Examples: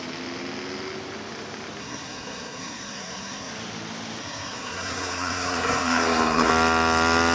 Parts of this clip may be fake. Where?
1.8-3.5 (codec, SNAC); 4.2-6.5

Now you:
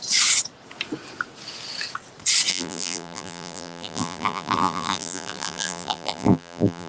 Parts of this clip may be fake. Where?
2.5-6.9 (vocoder, BigVGAN v2)